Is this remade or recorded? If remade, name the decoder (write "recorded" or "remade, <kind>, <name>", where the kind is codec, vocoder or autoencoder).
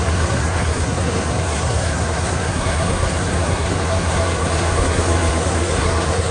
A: remade, codec, SNAC